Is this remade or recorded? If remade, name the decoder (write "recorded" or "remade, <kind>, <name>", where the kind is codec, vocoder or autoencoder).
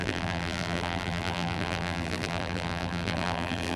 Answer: remade, vocoder, BigVGAN v2